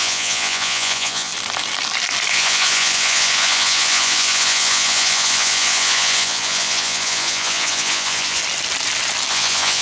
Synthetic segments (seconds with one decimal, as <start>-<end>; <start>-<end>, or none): 0.0-1.3; 2.3-8.4; 9.3-9.8